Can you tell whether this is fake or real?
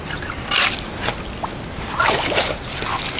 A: real